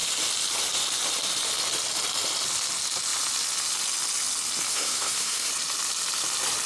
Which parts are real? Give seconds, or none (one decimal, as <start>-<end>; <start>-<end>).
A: 0.0-4.7; 5.5-6.7